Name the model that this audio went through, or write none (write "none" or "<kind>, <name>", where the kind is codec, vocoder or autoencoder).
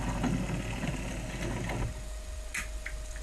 none